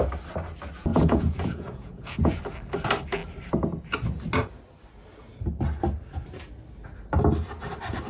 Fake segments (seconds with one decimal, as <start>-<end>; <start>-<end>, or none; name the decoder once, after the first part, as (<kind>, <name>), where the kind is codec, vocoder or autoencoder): 0.9-2.4 (vocoder, Vocos)